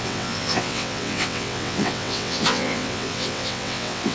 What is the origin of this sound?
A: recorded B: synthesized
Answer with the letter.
B